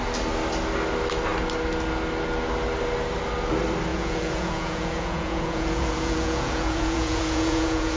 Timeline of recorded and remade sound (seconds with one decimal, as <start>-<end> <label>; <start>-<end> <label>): 0.0-3.9 recorded; 3.9-8.0 remade